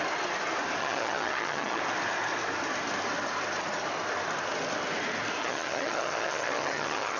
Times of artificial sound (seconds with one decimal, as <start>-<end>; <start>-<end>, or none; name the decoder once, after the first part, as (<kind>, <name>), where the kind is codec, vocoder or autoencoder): 0.8-1.8 (vocoder, HiFi-GAN); 5.4-7.2